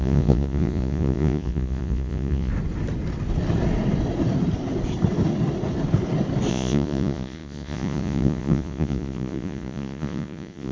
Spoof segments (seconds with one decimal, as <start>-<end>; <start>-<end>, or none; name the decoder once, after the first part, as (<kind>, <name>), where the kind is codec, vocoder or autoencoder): 0.0-2.5 (vocoder, Vocos); 6.5-10.7